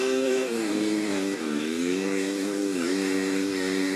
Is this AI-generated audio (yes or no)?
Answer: yes